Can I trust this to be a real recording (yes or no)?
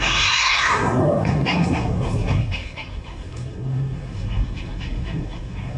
no